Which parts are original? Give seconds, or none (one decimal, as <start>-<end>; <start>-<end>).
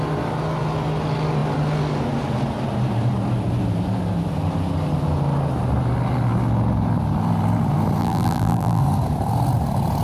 0.0-8.0; 8.8-10.0